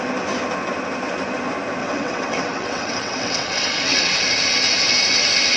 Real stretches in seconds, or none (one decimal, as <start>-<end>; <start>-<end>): 0.0-1.8; 4.2-5.6